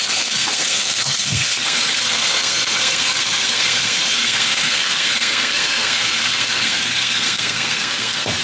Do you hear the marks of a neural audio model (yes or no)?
yes